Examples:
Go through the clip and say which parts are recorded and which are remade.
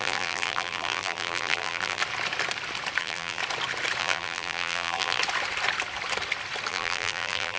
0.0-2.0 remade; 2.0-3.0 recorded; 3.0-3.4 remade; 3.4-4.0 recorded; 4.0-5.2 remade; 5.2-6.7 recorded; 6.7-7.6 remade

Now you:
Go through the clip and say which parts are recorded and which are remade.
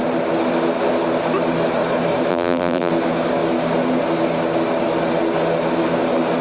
0.0-2.3 recorded; 2.3-2.9 remade; 2.9-6.4 recorded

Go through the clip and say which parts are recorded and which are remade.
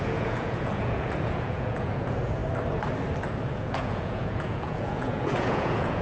0.0-2.4 remade; 2.4-3.5 recorded; 3.5-6.0 remade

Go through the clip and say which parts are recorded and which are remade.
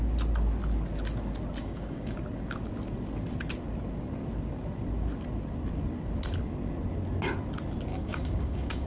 0.0-1.6 recorded; 1.6-2.2 remade; 2.2-7.9 recorded; 7.9-8.9 remade